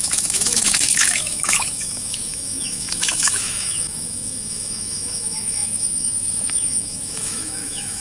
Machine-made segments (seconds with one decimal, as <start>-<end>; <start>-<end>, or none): 0.0-8.0